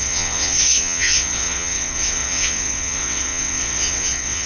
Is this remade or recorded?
remade